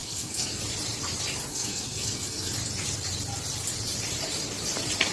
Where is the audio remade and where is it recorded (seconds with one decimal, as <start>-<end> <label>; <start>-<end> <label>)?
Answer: 0.0-0.6 remade; 0.6-1.5 recorded; 1.5-2.5 remade; 2.5-5.1 recorded